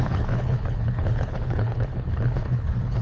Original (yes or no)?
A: no